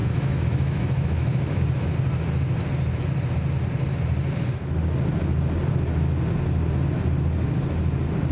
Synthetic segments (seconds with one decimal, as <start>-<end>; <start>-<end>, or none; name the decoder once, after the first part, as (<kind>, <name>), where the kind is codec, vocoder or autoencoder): 0.0-1.6 (autoencoder, DAC-VAE)